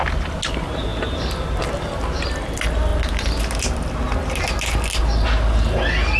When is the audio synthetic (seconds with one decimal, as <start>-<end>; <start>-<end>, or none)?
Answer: none